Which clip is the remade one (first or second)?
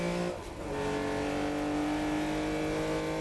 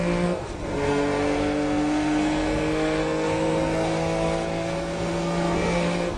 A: second